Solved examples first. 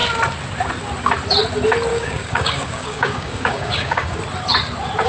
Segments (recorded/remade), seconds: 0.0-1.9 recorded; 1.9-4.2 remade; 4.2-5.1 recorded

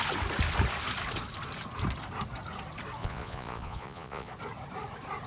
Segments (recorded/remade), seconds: 0.0-3.0 recorded; 3.0-4.3 remade; 4.3-5.3 recorded

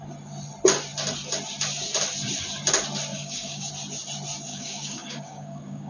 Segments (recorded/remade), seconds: 0.0-3.1 recorded; 3.1-3.7 remade; 3.7-4.5 recorded; 4.5-5.9 remade

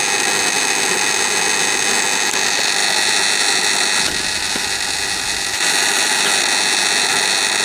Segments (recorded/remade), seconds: 0.0-7.6 recorded